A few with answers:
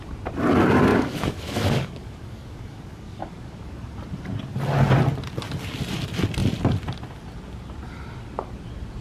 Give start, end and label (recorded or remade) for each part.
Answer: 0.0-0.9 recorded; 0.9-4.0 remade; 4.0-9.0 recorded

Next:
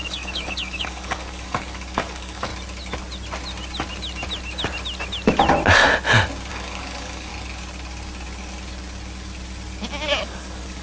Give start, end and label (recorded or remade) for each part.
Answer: 0.0-2.5 remade; 2.5-6.5 recorded; 6.5-7.3 remade; 7.3-10.2 recorded; 10.2-10.8 remade

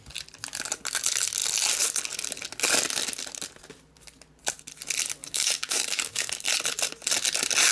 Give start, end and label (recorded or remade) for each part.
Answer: 0.0-5.2 recorded; 5.2-6.3 remade; 6.3-7.7 recorded

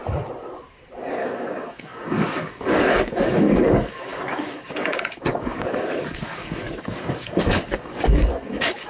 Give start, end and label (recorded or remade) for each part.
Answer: 0.0-1.1 recorded; 1.1-8.9 remade

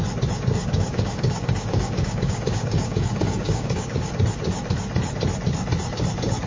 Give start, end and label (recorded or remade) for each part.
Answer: 0.0-0.6 recorded; 0.6-4.1 remade; 4.1-6.5 recorded

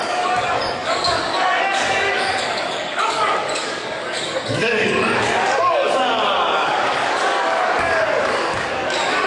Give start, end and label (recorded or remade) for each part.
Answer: 0.0-9.3 remade